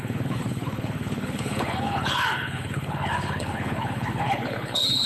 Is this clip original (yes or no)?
no